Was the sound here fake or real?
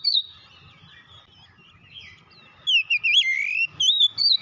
real